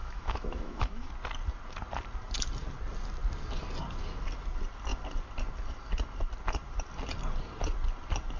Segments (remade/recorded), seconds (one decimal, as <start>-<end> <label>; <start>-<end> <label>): 0.0-1.1 remade; 1.1-8.4 recorded